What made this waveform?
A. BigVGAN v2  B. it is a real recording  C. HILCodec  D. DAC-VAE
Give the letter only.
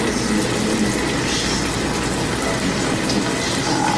B